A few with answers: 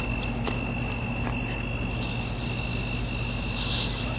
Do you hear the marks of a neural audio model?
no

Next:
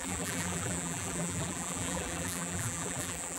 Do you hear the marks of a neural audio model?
yes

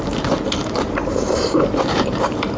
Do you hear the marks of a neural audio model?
yes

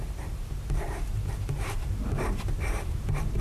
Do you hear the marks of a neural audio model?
yes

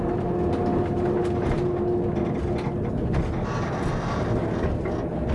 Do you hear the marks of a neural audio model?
no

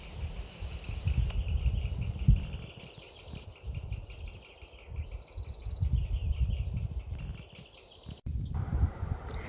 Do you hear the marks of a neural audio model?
no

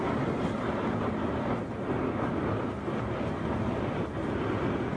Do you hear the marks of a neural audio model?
no